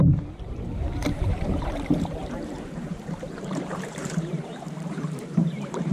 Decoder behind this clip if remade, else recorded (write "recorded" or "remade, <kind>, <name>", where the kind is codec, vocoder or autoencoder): remade, vocoder, BigVGAN v2